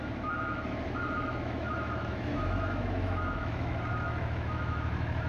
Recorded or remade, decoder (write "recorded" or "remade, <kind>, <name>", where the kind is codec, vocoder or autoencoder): remade, autoencoder, DAC-VAE